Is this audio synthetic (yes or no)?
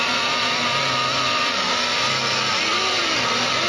no